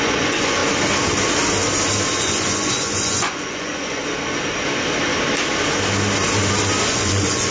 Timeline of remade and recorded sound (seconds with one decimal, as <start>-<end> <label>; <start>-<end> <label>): 0.0-0.6 remade; 0.6-2.2 recorded; 2.2-4.0 remade; 4.0-6.9 recorded; 6.9-7.5 remade